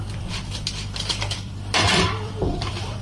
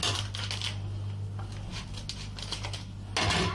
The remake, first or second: first